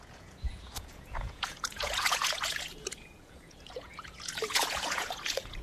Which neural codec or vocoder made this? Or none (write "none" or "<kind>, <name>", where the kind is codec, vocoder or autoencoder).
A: vocoder, Vocos